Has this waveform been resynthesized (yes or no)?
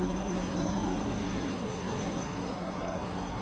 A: yes